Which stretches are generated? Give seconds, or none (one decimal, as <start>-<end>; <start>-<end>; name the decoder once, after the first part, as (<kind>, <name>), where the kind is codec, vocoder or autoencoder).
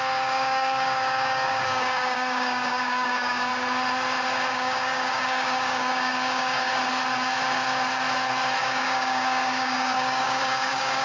0.0-3.5 (codec, DAC); 4.5-6.7; 8.6-11.0